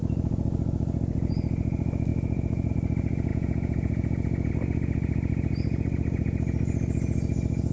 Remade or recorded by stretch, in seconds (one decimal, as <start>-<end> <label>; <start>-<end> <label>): 0.0-2.1 recorded; 2.1-2.7 remade; 2.7-3.3 recorded; 3.3-4.5 remade; 4.5-7.7 recorded